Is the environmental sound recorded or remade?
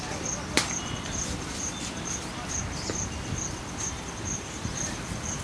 remade